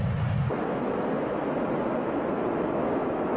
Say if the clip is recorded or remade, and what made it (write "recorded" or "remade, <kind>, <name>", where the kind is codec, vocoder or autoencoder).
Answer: recorded